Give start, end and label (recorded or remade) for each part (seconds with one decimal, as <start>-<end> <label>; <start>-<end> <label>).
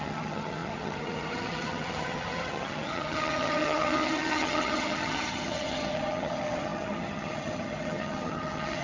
0.0-8.8 remade